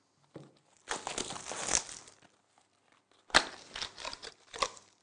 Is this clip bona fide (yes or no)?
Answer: yes